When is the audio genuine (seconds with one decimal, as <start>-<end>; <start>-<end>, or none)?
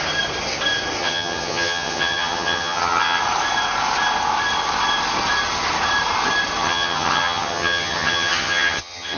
0.0-1.0; 3.2-6.6